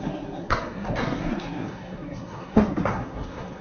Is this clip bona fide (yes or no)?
no